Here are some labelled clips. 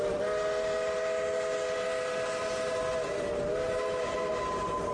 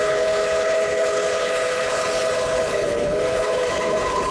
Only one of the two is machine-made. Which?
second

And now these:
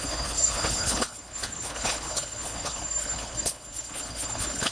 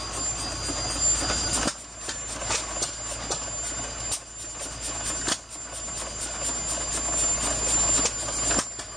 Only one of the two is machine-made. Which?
first